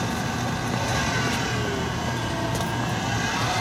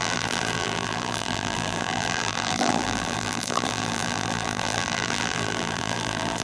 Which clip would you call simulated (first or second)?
second